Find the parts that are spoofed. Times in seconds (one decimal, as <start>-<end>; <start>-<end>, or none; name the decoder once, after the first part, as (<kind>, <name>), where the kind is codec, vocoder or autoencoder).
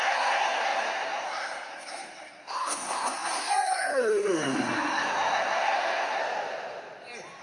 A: 0.0-6.2 (codec, SNAC)